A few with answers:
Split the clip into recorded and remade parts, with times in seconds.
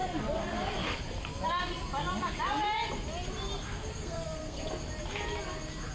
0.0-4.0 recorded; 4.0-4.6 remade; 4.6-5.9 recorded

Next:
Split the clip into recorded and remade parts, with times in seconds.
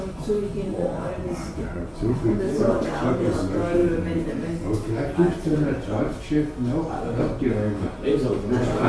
0.0-0.6 recorded; 0.6-2.2 remade; 2.2-8.9 recorded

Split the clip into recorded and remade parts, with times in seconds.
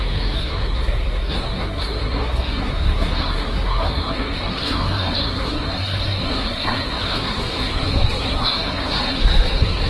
0.0-9.9 remade